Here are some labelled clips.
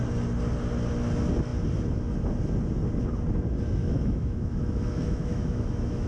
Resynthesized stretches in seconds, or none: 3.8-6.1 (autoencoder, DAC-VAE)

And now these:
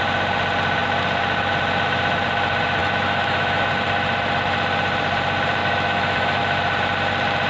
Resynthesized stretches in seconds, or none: 2.8-3.7 (autoencoder, DAC-VAE); 5.6-6.4

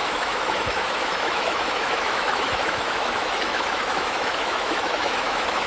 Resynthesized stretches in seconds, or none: 0.0-5.7 (autoencoder, DAC-VAE)

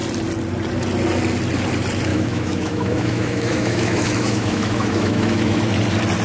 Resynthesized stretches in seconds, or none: 2.1-5.6 (autoencoder, DAC-VAE)

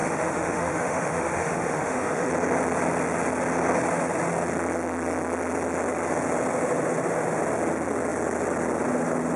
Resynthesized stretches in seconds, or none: 0.0-2.3 (autoencoder, DAC-VAE)

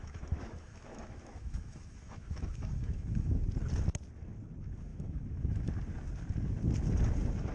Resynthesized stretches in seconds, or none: 0.0-3.4 (autoencoder, DAC-VAE); 4.9-5.7

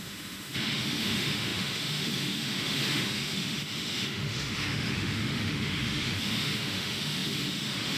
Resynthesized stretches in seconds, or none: 0.0-8.0 (autoencoder, DAC-VAE)